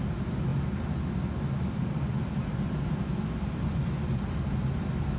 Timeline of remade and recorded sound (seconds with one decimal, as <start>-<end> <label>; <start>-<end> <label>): 0.0-5.2 recorded